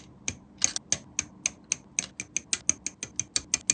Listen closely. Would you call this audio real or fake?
real